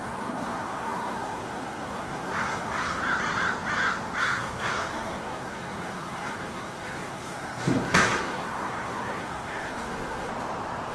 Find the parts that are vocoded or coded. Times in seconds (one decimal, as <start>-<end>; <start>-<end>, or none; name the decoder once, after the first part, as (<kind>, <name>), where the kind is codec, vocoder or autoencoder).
0.0-3.0 (codec, SNAC); 4.2-10.3